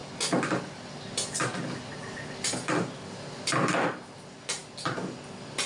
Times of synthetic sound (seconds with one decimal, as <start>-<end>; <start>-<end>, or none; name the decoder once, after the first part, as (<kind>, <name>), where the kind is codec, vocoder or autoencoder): none